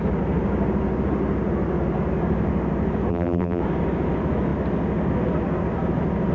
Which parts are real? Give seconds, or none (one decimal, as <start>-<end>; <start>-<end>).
0.0-3.1; 3.6-6.3